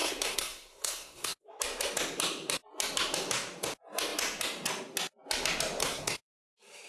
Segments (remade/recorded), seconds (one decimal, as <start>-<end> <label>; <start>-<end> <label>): 0.0-1.6 remade; 1.6-5.8 recorded; 5.8-6.3 remade; 6.3-6.9 recorded